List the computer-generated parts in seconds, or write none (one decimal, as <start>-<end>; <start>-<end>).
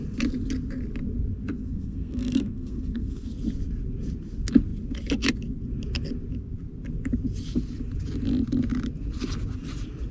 1.5-3.3